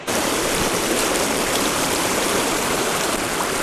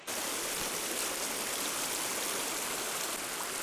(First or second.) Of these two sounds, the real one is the second